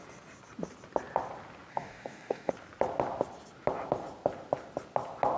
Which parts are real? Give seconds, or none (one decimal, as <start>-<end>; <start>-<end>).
0.0-1.7; 2.5-5.4